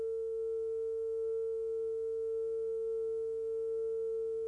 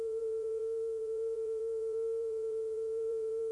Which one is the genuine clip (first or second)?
first